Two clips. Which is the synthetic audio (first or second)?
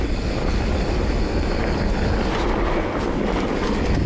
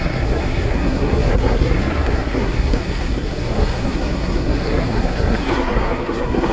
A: second